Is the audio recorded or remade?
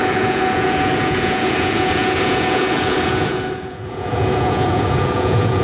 remade